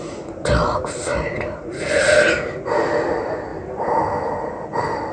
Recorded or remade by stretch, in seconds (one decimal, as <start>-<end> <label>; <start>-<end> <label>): 0.0-5.1 recorded